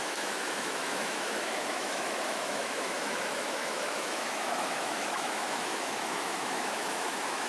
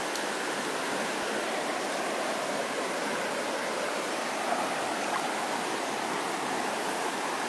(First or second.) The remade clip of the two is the first